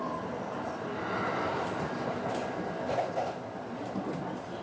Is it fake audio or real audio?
real